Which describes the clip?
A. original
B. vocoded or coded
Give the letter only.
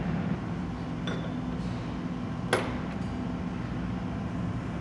A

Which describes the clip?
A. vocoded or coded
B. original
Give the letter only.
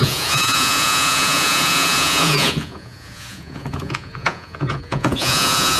A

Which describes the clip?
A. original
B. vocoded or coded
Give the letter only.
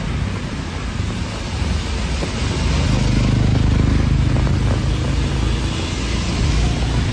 A